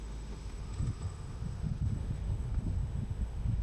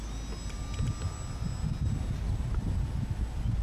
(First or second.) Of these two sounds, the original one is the second